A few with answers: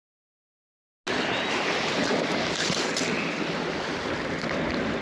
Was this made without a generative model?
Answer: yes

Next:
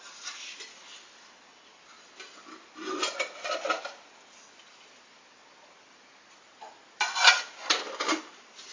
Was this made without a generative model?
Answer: yes